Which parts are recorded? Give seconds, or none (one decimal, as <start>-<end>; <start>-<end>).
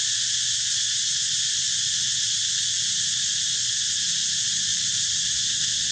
0.0-4.7; 5.5-5.9